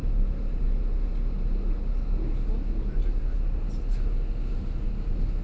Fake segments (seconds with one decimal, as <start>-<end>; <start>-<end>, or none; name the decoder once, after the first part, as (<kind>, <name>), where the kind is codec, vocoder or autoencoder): none